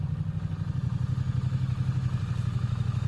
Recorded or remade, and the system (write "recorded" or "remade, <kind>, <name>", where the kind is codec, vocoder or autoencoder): recorded